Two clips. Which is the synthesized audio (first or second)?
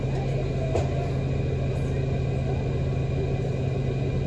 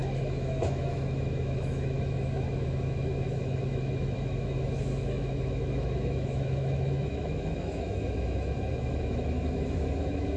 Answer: second